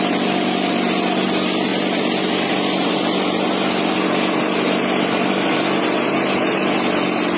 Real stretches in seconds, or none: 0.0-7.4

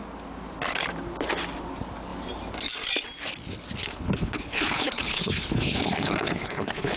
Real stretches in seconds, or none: 0.0-3.8

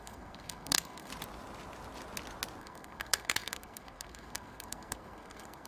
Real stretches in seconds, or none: 1.1-2.6

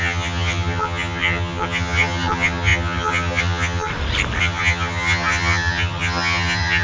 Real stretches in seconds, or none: 3.9-4.4

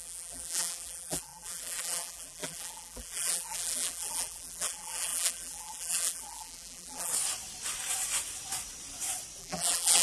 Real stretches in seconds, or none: 7.1-9.4

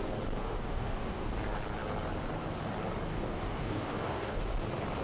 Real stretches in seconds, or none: 0.0-0.4; 1.3-3.1; 4.4-5.0